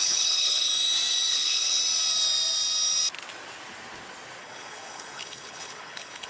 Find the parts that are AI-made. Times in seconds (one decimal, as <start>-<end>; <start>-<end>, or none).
0.0-0.7; 1.3-1.8; 4.4-6.3